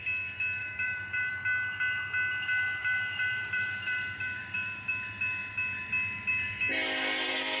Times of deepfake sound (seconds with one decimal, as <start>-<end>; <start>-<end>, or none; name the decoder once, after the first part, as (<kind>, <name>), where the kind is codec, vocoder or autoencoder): 0.6-1.3 (vocoder, BigVGAN v2); 2.8-4.9